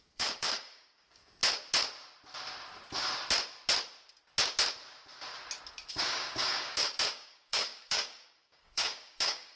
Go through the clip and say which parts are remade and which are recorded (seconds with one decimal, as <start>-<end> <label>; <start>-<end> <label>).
0.0-1.2 remade; 1.2-5.9 recorded; 5.9-9.6 remade